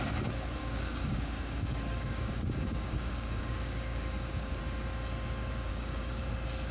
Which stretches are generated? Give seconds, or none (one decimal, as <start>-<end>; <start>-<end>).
0.6-4.6; 5.7-6.2